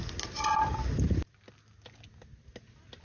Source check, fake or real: real